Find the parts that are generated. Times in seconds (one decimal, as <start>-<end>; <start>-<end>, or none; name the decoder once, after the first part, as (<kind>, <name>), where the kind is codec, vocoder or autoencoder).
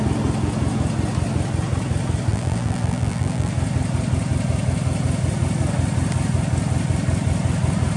2.3-3.5 (vocoder, BigVGAN v2)